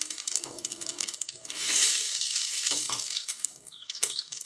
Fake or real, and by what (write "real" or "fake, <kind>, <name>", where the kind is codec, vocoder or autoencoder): fake, codec, DAC